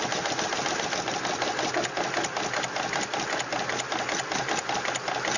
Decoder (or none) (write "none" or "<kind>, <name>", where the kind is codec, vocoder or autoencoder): none